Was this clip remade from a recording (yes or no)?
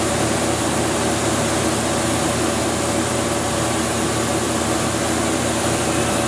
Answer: no